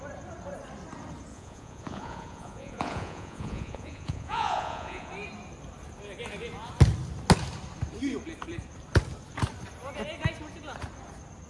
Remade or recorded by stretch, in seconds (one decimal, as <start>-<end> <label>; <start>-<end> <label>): 0.0-1.3 recorded; 1.3-5.1 remade; 5.1-11.5 recorded